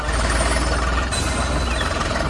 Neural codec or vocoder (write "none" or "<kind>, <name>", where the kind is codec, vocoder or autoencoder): none